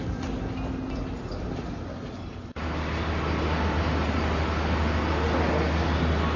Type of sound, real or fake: real